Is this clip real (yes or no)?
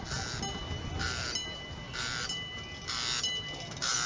yes